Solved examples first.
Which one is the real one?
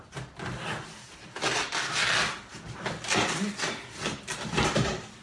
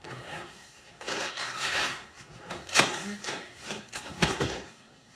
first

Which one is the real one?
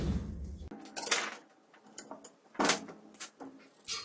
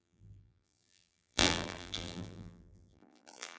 first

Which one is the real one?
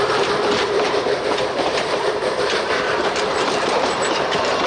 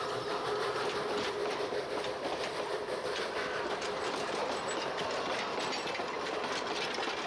second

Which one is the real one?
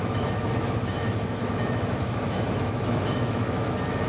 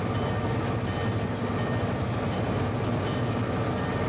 second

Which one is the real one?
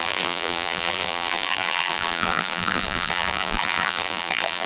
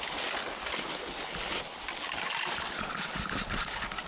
second